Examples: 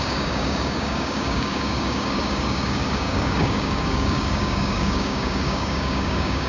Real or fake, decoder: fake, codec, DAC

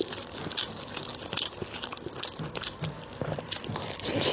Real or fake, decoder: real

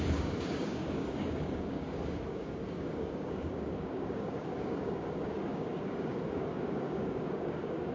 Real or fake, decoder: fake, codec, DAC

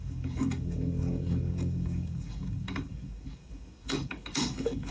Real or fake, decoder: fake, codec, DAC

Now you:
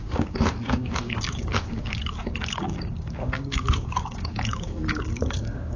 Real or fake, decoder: fake, codec, DAC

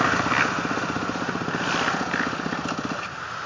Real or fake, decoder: real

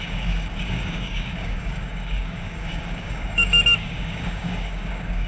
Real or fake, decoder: fake, codec, DAC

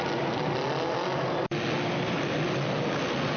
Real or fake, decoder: real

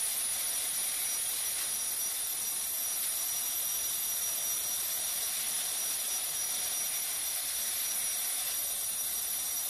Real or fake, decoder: real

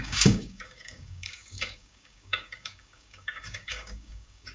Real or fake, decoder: fake, codec, DAC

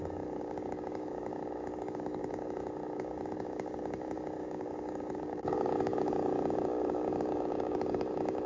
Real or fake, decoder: fake, codec, DAC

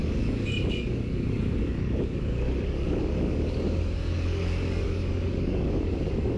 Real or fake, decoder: fake, codec, DAC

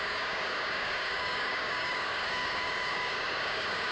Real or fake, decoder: fake, codec, DAC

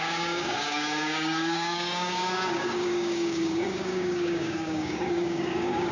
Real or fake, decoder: fake, codec, DAC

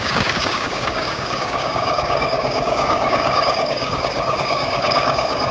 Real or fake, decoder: fake, codec, DAC